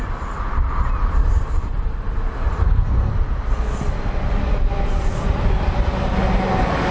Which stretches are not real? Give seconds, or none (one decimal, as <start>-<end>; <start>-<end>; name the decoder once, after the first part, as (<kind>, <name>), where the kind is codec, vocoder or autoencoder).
2.6-3.1 (codec, SNAC)